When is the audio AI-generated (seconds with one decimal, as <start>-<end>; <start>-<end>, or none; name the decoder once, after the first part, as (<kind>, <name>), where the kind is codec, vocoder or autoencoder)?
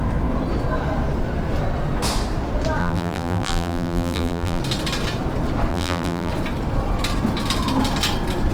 2.8-4.6 (vocoder, BigVGAN v2); 5.7-6.3